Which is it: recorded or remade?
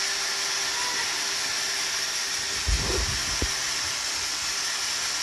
recorded